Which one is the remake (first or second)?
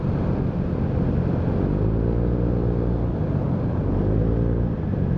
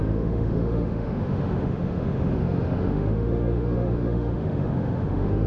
second